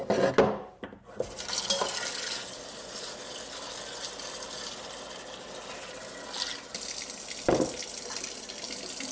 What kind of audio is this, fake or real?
real